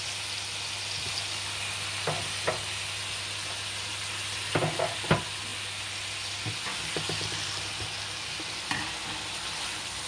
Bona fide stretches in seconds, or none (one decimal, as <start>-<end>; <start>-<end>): 0.0-10.1